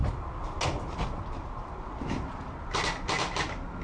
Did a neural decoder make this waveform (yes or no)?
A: no